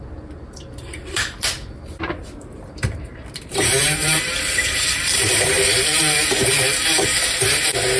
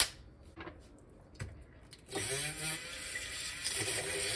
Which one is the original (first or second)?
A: second